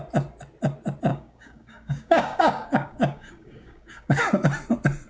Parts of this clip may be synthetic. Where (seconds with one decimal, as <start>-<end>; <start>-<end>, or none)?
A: 1.1-4.2

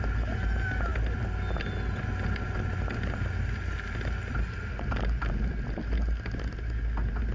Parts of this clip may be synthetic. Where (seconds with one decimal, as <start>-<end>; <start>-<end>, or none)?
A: none